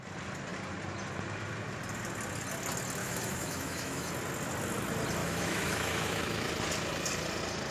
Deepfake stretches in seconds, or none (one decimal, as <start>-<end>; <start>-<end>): 3.0-4.1; 5.2-6.5

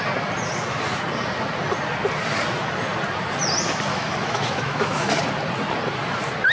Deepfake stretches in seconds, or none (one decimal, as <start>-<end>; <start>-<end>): 3.9-5.2